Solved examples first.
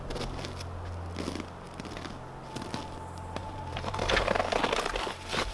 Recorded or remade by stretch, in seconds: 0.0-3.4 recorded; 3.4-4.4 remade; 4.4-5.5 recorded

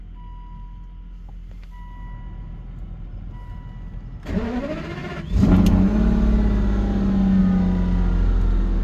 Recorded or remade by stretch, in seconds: 0.0-8.8 recorded